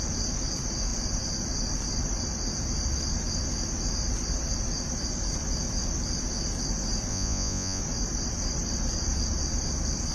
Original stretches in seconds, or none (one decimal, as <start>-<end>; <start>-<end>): 0.0-7.1; 7.8-10.1